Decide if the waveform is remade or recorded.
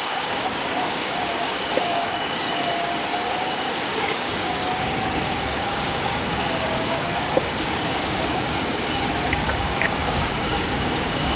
remade